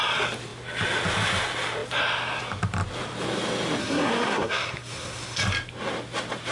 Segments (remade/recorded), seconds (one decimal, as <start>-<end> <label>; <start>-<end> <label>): 0.0-3.8 recorded; 3.8-5.4 remade; 5.4-6.5 recorded